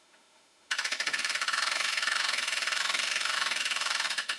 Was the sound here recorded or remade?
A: remade